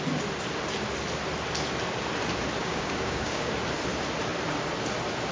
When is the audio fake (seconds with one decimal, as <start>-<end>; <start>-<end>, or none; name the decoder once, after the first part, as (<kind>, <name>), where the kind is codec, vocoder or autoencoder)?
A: 2.6-3.5 (codec, DAC)